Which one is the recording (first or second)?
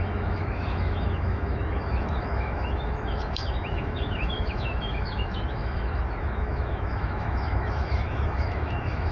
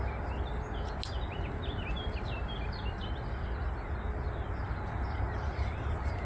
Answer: second